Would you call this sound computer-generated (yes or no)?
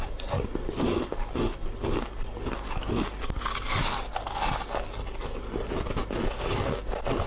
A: no